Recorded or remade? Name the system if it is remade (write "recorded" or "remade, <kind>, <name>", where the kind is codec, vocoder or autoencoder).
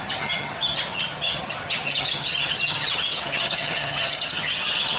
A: remade, vocoder, HiFi-GAN